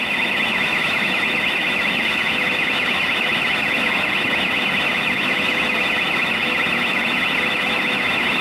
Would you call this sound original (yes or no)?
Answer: no